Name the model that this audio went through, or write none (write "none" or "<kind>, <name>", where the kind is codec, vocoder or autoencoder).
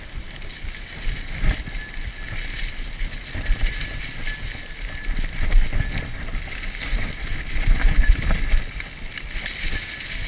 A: none